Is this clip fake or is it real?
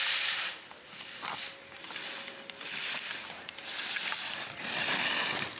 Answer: real